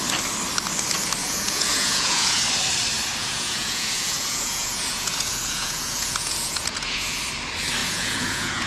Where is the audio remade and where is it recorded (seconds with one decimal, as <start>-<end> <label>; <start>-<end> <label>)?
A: 0.0-1.2 recorded; 1.2-2.4 remade; 2.4-3.2 recorded; 3.2-7.2 remade; 7.2-7.8 recorded; 7.8-8.7 remade

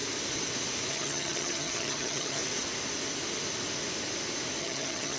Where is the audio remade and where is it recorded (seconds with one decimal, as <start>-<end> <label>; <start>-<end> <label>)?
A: 0.0-0.9 recorded; 0.9-2.4 remade; 2.4-4.6 recorded; 4.6-5.2 remade

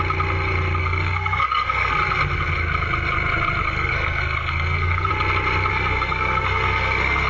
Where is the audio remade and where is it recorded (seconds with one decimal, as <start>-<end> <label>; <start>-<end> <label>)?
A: 0.0-0.8 recorded; 0.8-1.9 remade; 1.9-3.6 recorded; 3.6-5.1 remade; 5.1-5.7 recorded; 5.7-7.3 remade

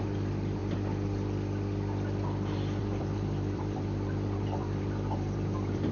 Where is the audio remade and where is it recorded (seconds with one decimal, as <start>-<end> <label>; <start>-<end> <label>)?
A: 0.0-0.6 remade; 0.6-2.8 recorded; 2.8-5.9 remade

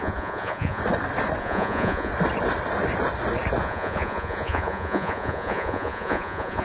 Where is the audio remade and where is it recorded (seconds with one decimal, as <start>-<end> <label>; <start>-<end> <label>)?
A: 0.0-0.8 remade; 0.8-1.4 recorded; 1.4-2.1 remade; 2.1-3.6 recorded; 3.6-6.6 remade

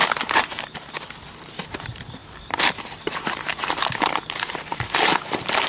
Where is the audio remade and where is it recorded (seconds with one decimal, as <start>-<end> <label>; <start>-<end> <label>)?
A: 0.0-0.9 remade; 0.9-2.2 recorded; 2.2-5.7 remade

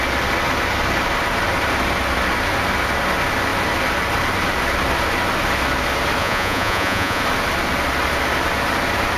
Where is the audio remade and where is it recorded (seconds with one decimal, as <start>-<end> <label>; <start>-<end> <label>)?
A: 0.0-6.2 recorded; 6.2-7.2 remade; 7.2-9.2 recorded